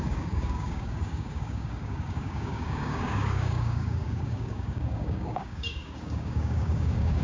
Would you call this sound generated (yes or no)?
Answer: yes